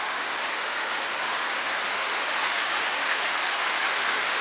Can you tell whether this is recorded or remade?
remade